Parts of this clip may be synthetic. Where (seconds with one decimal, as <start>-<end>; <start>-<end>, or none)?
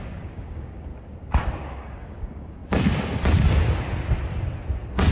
0.0-0.9; 1.5-2.6